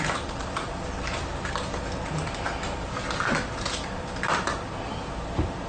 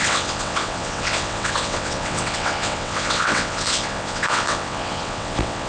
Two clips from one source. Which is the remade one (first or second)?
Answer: second